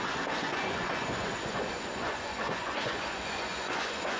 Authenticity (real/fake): fake